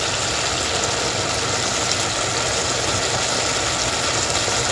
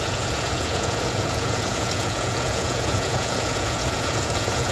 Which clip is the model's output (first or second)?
second